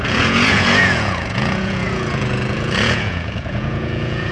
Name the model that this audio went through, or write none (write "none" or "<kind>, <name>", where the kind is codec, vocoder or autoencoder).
vocoder, Vocos